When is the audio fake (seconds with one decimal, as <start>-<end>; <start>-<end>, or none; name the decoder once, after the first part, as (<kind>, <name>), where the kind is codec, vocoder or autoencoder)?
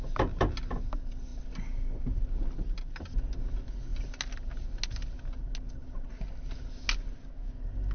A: none